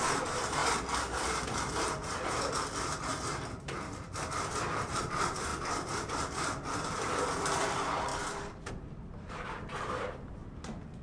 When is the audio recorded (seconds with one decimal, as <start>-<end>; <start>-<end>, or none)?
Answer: 0.6-4.7; 5.5-7.3